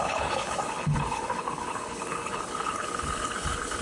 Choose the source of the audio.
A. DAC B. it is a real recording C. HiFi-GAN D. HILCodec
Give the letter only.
D